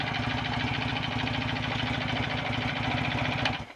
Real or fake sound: real